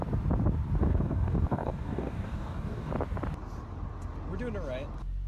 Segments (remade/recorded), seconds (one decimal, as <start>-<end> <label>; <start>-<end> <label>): 0.0-0.8 recorded; 0.8-2.9 remade; 2.9-5.3 recorded